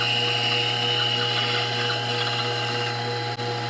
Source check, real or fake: real